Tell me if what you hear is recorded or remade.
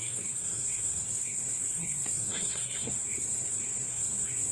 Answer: remade